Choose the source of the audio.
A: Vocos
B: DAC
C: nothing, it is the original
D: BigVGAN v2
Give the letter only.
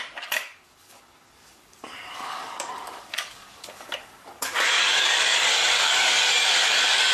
B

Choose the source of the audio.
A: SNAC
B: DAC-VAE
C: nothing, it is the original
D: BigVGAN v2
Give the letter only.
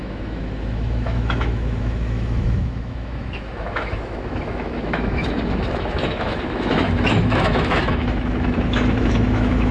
B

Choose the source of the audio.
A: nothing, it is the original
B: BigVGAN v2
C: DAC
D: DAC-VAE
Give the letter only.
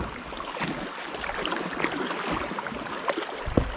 A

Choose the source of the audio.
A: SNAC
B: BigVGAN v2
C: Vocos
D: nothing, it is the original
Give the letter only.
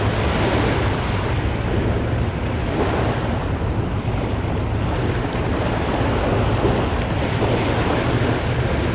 D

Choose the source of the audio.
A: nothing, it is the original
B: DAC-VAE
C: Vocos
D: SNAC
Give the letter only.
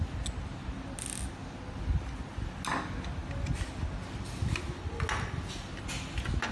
A